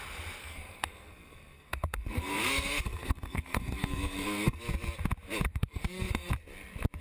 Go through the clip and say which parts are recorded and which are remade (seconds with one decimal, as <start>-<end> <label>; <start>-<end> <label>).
0.0-0.4 recorded; 0.4-4.6 remade; 4.6-5.5 recorded; 5.5-6.3 remade; 6.3-7.0 recorded